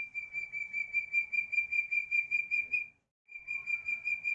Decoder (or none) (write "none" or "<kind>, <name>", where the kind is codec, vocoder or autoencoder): none